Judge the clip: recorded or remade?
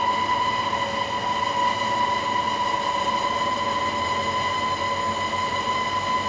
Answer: recorded